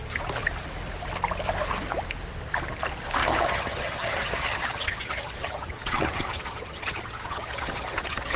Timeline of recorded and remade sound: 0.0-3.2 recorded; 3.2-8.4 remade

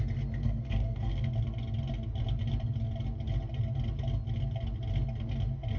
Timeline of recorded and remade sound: 0.0-0.4 recorded; 0.4-1.3 remade; 1.3-5.8 recorded

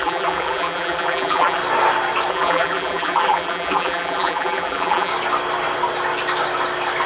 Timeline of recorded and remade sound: 0.0-1.6 remade; 1.6-2.3 recorded; 2.3-5.1 remade; 5.1-7.1 recorded

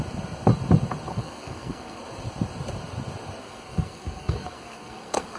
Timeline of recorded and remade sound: 0.0-1.1 recorded; 1.1-2.0 remade; 2.0-3.4 recorded; 3.4-5.4 remade

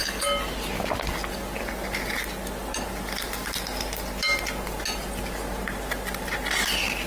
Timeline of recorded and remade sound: 0.0-7.1 recorded

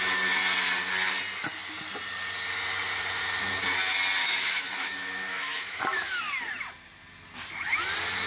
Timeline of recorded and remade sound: 0.0-4.2 recorded; 4.2-6.2 remade; 6.2-8.3 recorded